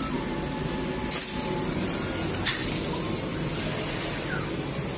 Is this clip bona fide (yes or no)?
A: yes